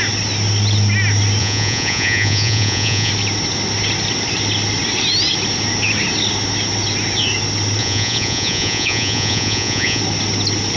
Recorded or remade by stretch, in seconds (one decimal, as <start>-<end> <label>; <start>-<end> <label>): 0.0-1.4 recorded; 1.4-3.1 remade; 3.1-7.8 recorded; 7.8-10.0 remade; 10.0-10.8 recorded